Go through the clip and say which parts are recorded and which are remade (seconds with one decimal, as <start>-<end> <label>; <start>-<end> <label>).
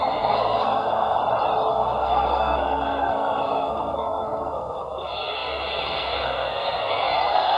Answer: 0.0-1.2 remade; 1.2-1.7 recorded; 1.7-7.6 remade